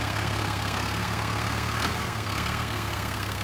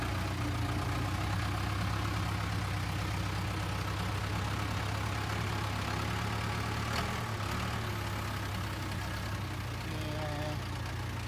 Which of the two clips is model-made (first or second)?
first